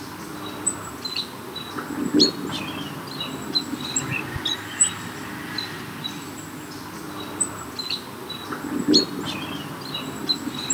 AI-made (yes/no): no